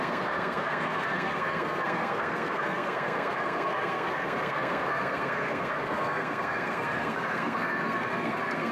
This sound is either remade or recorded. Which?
remade